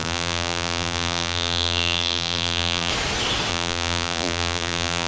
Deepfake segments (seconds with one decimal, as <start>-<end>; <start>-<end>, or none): 0.0-2.9; 3.5-5.1

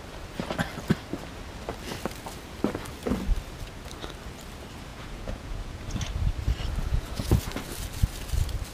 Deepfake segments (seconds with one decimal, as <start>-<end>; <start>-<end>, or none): 4.9-5.8; 6.9-7.5

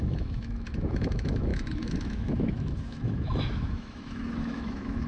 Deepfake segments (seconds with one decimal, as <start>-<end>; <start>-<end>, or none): 0.0-5.1

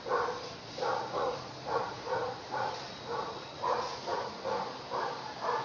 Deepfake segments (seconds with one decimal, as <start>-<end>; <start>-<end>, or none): 0.9-2.7; 3.1-4.4